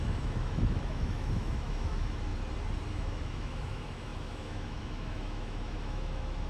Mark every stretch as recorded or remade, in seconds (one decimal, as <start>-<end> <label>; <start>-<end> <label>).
0.0-2.3 remade; 2.3-2.9 recorded; 2.9-6.5 remade